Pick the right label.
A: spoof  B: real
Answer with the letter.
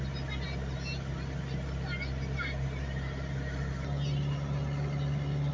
B